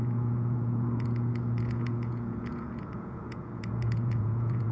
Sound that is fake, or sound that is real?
fake